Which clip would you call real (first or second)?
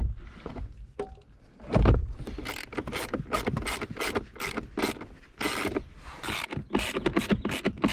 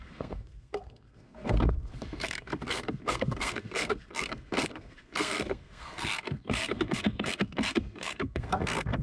first